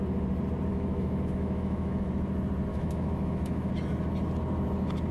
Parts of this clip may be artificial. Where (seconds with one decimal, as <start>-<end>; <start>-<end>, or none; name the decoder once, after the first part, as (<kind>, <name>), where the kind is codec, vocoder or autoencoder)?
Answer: 0.7-2.1 (autoencoder, DAC-VAE); 2.7-3.7